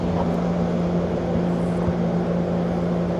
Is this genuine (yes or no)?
yes